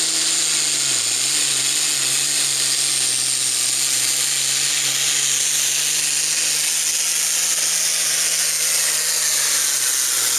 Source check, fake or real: real